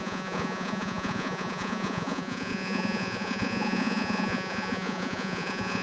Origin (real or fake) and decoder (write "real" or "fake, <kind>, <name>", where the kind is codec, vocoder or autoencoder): fake, vocoder, Vocos